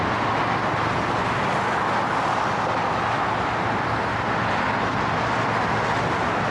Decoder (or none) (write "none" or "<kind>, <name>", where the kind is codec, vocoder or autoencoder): none